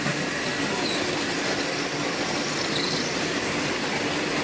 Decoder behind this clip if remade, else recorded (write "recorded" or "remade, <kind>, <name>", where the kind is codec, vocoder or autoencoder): recorded